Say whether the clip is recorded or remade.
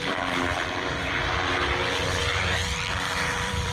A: remade